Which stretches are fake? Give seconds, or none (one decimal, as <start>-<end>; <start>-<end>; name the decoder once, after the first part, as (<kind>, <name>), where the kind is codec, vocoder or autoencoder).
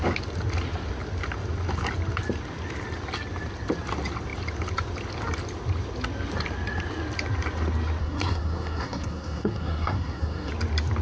8.0-10.5 (codec, SNAC)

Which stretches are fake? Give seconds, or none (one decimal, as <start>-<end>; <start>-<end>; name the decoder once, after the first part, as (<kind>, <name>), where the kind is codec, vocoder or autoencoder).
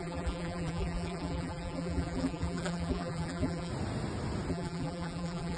0.0-3.7 (vocoder, BigVGAN v2); 4.5-5.6